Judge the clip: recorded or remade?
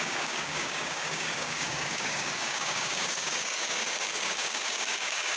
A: remade